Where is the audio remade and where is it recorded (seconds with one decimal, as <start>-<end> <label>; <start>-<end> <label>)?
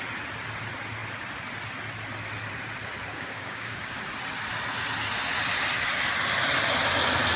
0.0-3.1 recorded; 3.1-4.0 remade; 4.0-7.4 recorded